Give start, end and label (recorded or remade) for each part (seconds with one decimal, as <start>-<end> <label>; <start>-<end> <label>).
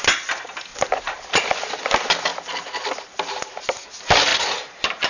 0.0-0.7 recorded; 0.7-1.3 remade; 1.3-5.1 recorded